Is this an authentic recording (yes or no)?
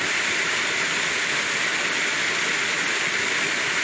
yes